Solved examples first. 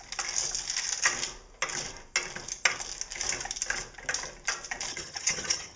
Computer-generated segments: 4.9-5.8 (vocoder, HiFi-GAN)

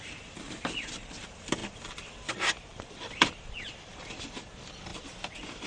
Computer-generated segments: 2.7-3.9 (vocoder, BigVGAN v2); 4.9-5.7

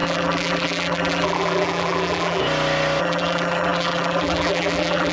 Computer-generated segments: 0.0-2.4 (vocoder, BigVGAN v2); 3.0-5.1

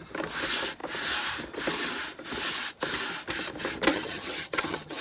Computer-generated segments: 3.9-5.0 (vocoder, HiFi-GAN)

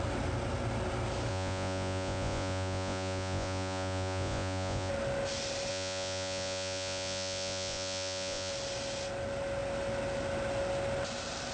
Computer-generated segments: 1.3-4.9 (vocoder, Vocos); 5.7-8.5

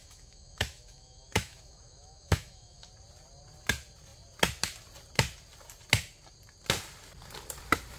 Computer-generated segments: 0.0-2.9 (autoencoder, DAC-VAE)

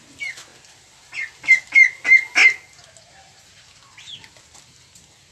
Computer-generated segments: none

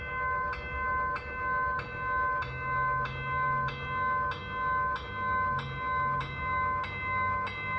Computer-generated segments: none